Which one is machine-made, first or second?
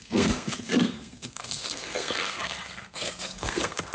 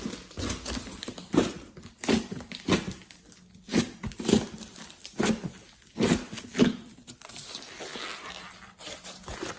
first